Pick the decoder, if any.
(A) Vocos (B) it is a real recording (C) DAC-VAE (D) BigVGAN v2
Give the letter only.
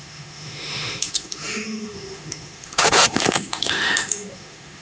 C